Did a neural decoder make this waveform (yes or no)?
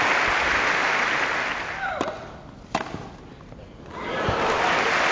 no